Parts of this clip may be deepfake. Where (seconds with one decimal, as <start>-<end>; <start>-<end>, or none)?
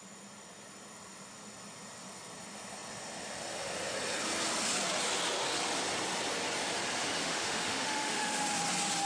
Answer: 7.2-8.4